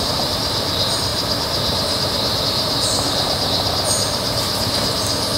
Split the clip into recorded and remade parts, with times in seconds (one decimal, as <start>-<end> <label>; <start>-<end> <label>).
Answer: 0.0-1.1 remade; 1.1-2.4 recorded; 2.4-5.4 remade